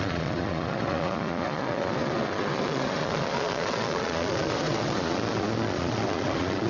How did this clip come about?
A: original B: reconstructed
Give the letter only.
B